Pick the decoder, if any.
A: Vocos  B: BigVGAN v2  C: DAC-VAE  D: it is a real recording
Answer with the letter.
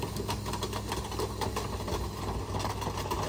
D